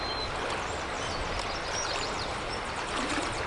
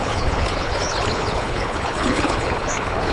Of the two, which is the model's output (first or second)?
second